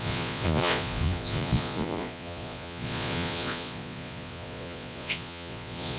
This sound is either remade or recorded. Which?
remade